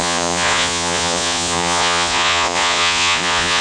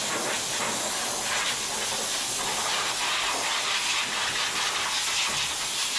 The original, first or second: second